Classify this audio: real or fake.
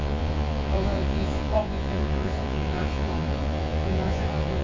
fake